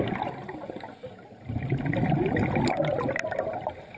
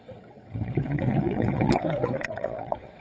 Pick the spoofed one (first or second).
second